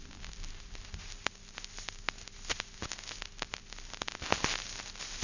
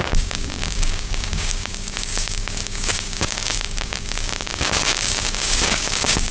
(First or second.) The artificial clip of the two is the second